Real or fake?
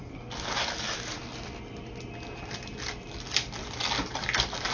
real